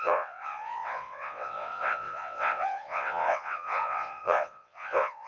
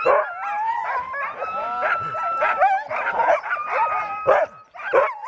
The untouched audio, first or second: second